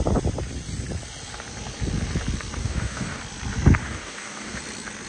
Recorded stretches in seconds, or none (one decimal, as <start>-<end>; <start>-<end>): 0.0-2.6; 3.2-3.8; 4.6-5.1